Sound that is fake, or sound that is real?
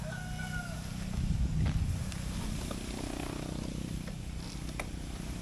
real